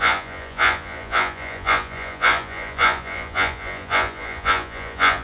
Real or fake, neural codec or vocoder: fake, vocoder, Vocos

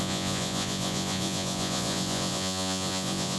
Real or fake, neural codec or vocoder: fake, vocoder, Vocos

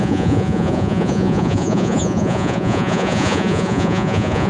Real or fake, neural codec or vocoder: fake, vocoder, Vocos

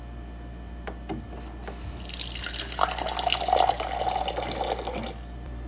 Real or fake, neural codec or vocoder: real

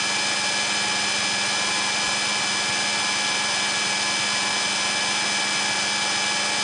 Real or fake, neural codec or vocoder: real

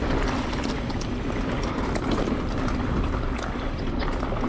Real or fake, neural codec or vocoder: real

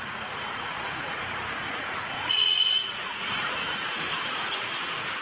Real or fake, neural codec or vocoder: fake, vocoder, Vocos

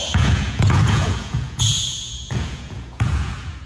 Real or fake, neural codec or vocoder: fake, vocoder, Vocos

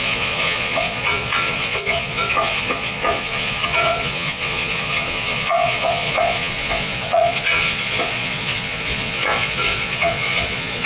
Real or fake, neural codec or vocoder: fake, vocoder, Vocos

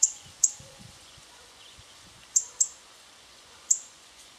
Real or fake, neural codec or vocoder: fake, vocoder, Vocos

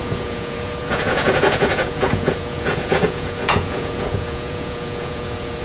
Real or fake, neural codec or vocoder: fake, vocoder, Vocos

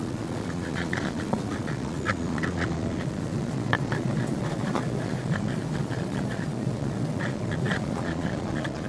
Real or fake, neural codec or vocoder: fake, vocoder, Vocos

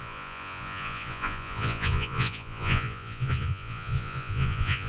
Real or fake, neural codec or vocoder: fake, vocoder, Vocos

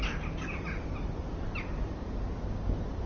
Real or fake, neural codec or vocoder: real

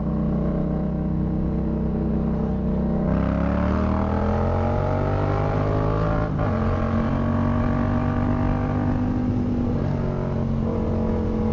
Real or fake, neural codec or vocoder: real